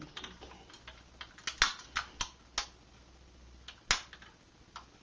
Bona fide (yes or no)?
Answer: yes